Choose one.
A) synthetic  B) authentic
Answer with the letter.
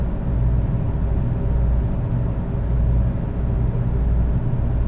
B